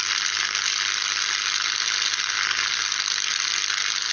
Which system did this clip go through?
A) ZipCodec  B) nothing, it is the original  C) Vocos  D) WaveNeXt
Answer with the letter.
B